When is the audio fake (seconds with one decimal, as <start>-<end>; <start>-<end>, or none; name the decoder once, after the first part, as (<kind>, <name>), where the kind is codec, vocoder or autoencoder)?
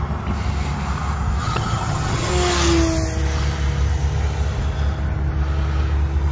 1.4-2.3 (vocoder, HiFi-GAN)